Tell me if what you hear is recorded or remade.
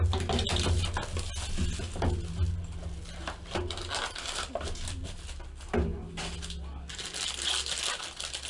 recorded